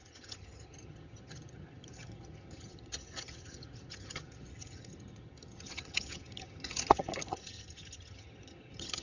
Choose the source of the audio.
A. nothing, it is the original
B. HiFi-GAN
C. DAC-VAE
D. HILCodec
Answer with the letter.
B